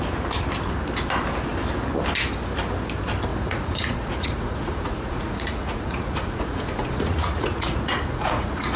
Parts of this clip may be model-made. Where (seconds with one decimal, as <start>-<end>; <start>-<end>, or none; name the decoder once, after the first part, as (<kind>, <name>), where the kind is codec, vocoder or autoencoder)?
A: 3.3-8.8 (vocoder, Vocos)